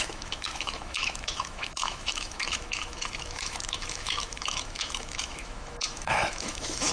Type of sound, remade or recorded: remade